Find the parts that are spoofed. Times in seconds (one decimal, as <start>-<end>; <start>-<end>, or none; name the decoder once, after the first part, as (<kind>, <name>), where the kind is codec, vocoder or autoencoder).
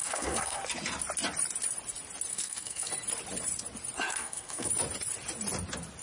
0.0-0.6 (codec, SNAC); 2.3-2.9; 4.1-4.7